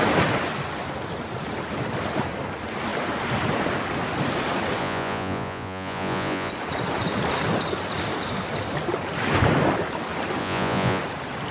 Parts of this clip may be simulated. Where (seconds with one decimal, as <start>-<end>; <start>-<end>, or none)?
4.8-6.5; 10.4-11.0

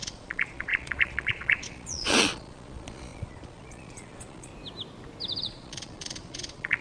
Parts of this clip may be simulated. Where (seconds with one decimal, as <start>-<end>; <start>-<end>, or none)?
0.0-4.5; 5.4-6.8

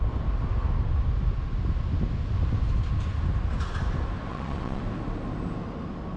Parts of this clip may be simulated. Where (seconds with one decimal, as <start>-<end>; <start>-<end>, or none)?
4.3-4.8

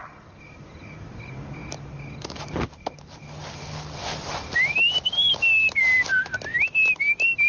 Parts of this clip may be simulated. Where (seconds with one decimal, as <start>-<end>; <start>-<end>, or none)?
none